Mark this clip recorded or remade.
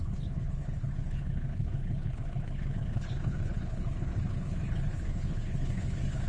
remade